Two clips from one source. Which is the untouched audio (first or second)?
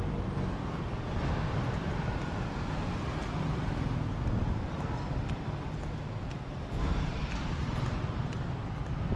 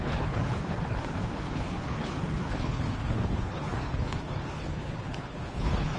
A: first